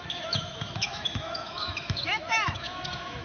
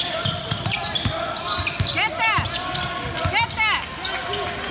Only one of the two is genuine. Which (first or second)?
second